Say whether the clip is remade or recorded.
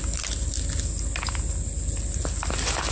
recorded